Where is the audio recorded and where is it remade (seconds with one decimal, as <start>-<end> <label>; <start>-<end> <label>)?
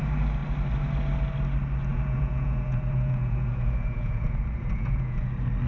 0.0-1.9 recorded; 1.9-5.3 remade; 5.3-5.7 recorded